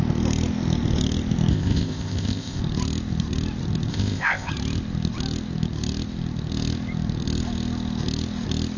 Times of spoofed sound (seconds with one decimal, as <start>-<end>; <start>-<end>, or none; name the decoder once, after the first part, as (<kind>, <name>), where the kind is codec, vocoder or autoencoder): 1.5-2.6 (codec, ZipCodec); 3.9-4.5